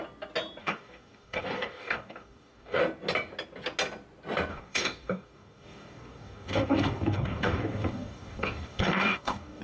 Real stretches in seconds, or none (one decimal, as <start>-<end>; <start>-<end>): 0.0-0.6; 2.8-4.5